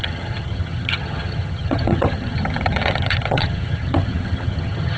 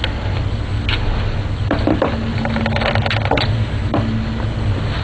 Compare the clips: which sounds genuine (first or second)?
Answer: second